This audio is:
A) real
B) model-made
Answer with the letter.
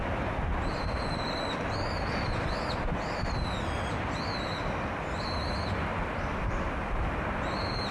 A